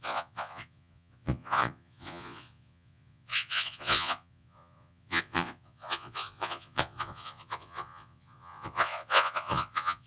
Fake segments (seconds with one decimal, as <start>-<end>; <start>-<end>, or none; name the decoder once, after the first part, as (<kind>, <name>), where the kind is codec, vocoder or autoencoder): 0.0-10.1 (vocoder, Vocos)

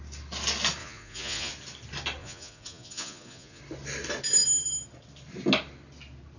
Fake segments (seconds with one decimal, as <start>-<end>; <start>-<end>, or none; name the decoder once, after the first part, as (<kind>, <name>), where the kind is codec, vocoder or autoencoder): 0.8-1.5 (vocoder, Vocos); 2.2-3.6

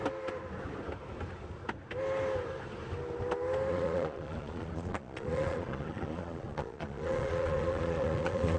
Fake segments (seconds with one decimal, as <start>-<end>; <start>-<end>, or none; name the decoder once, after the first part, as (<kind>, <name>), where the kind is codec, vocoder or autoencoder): 3.7-8.6 (vocoder, Vocos)

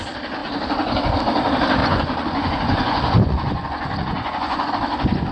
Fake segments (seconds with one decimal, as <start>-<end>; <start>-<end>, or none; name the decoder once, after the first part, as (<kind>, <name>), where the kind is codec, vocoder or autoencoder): 1.8-4.7 (vocoder, Vocos)